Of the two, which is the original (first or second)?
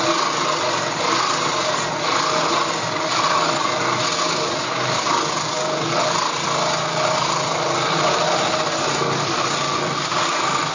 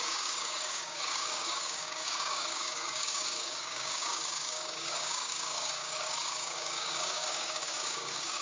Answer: first